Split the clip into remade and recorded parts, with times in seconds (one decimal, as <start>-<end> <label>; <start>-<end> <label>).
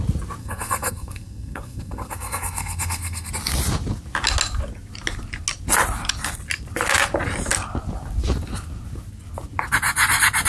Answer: 0.0-0.4 recorded; 0.4-3.3 remade; 3.3-10.5 recorded